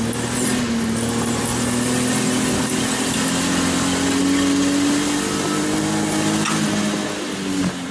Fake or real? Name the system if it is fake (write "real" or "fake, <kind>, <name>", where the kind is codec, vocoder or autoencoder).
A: real